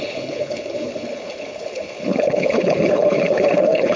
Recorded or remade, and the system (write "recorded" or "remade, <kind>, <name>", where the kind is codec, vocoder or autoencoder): remade, codec, HILCodec